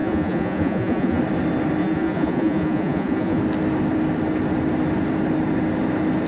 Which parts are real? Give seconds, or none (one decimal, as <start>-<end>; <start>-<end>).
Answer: 1.2-1.8; 3.4-6.3